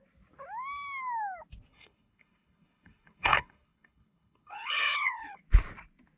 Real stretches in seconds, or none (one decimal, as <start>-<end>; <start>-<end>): 0.0-1.7; 5.4-6.2